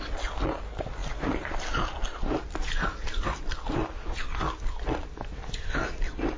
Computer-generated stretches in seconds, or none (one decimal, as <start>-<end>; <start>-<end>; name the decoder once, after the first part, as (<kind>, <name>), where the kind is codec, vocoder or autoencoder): none